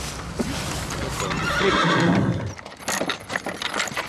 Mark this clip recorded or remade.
recorded